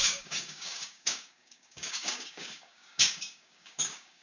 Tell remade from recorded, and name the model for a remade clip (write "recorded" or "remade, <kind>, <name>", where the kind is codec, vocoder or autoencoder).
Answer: remade, codec, DAC